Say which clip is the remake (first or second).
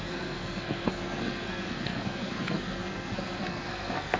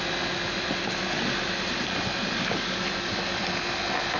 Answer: first